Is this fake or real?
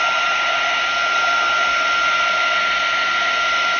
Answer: real